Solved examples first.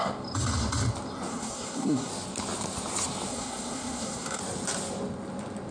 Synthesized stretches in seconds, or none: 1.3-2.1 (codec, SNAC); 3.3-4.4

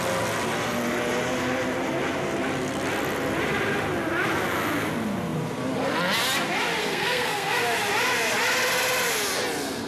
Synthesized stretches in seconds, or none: 6.8-7.6 (codec, SNAC)

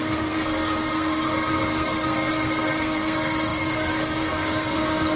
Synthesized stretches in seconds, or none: 0.0-5.2 (codec, SNAC)

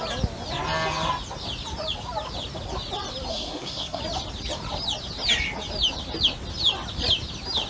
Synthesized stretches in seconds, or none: 3.3-4.0 (codec, SNAC)

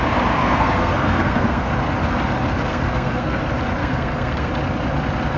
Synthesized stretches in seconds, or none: 0.4-1.7 (codec, SNAC); 2.7-3.4; 3.8-4.5

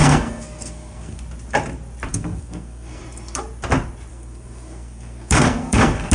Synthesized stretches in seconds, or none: 0.0-1.2 (codec, SNAC); 2.1-3.0; 4.1-6.1

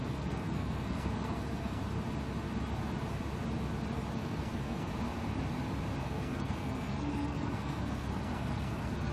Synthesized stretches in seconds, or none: 0.0-1.8 (codec, SNAC); 4.1-4.9; 6.0-9.1

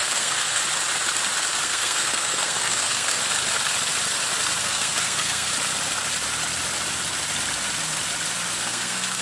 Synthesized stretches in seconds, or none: 0.0-0.6 (codec, SNAC); 1.6-3.2; 4.6-5.5; 8.6-9.2